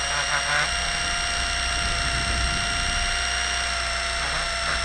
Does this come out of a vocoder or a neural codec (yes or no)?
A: no